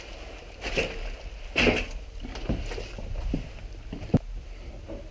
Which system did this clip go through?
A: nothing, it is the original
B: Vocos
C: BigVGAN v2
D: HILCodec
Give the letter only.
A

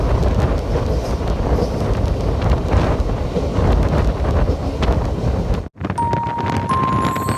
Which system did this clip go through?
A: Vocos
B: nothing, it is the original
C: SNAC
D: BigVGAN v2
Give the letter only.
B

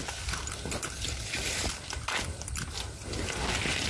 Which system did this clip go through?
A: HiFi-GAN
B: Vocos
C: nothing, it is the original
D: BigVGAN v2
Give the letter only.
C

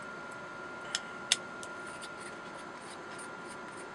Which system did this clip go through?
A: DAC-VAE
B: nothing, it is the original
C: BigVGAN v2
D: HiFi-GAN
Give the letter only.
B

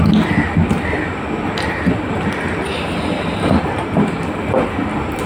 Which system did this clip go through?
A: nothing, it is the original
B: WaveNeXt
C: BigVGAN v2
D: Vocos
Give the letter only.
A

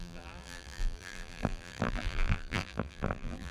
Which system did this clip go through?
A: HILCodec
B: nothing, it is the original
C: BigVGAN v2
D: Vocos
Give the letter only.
C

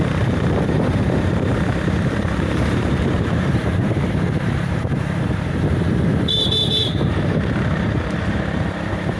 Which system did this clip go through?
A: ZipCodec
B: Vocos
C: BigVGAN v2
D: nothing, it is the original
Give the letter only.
C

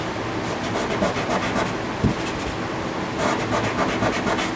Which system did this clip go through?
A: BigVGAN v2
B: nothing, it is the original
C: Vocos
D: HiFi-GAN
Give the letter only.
B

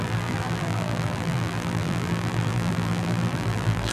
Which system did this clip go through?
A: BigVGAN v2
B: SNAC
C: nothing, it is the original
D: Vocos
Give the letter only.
A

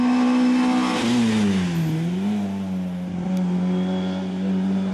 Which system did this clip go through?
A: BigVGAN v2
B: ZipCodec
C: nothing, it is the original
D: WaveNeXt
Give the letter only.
C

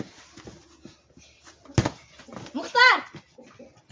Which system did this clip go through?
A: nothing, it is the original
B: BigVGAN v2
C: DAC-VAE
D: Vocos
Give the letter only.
A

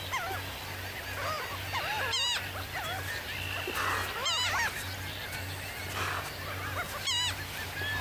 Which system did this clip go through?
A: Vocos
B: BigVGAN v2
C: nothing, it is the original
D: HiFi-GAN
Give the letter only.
C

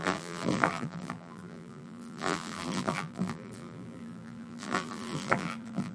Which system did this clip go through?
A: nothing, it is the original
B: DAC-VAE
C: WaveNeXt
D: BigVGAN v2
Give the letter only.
D